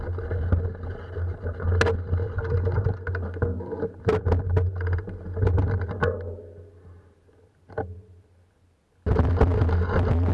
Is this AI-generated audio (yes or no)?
no